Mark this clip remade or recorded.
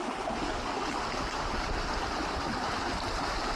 recorded